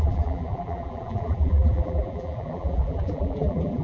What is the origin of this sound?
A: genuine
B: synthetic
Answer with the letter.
B